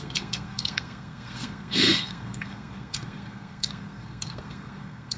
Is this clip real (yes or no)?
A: no